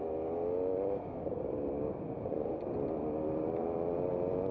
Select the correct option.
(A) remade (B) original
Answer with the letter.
A